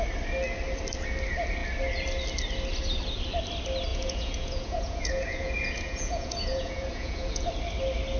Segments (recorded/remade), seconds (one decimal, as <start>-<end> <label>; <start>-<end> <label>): 0.0-3.9 recorded; 3.9-7.5 remade; 7.5-8.2 recorded